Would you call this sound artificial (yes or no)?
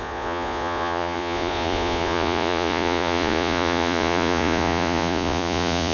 yes